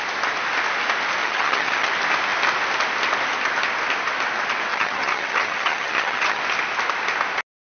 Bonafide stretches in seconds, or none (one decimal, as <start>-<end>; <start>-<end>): 0.0-1.2; 1.9-4.7; 6.4-7.6